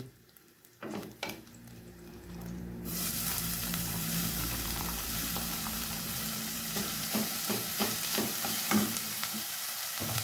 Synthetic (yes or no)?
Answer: yes